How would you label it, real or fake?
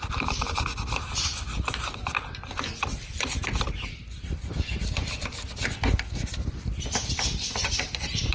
real